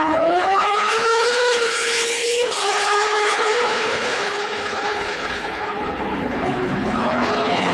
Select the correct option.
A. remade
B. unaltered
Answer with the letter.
A